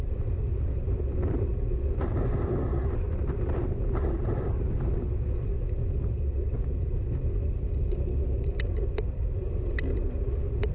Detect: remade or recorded recorded